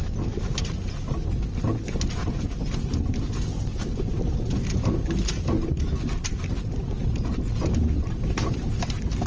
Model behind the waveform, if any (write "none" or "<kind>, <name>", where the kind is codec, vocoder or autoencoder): none